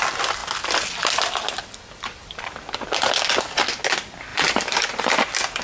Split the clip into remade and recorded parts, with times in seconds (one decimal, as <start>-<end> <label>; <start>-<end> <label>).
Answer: 0.0-4.3 recorded; 4.3-5.1 remade; 5.1-5.6 recorded